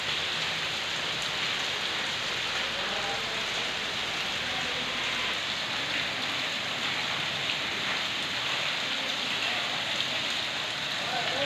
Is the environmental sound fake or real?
real